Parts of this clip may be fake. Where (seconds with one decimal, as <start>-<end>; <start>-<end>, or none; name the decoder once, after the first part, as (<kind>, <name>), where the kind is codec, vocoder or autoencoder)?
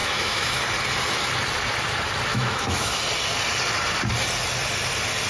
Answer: 0.0-0.6 (autoencoder, DAC-VAE); 2.3-3.0